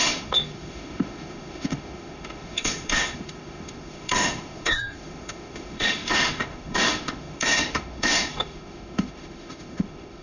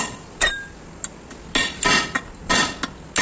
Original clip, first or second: second